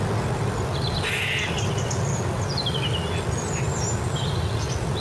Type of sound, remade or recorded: recorded